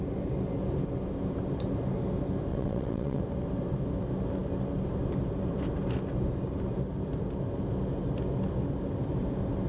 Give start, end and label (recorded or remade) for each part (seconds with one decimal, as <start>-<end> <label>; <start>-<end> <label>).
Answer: 0.0-2.5 recorded; 2.5-3.2 remade; 3.2-9.7 recorded